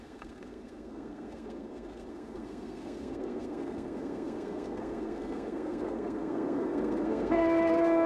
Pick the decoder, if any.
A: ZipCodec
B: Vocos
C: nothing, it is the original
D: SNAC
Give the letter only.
D